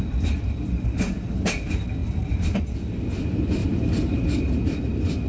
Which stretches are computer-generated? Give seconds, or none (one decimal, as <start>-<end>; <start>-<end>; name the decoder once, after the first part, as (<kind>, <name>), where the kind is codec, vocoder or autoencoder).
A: 3.6-4.2 (vocoder, BigVGAN v2)